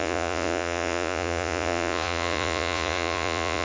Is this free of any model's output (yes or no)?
no